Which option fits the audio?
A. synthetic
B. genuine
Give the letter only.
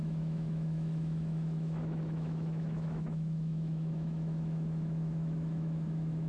A